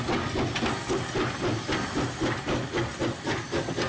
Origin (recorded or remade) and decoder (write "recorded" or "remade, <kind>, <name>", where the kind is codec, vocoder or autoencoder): recorded